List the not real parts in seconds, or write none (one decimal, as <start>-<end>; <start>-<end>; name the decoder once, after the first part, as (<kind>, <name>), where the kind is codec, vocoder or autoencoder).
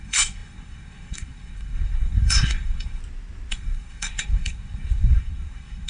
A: 0.0-3.0 (codec, SNAC); 3.5-5.9